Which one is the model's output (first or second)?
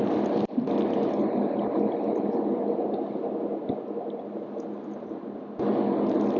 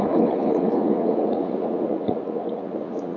second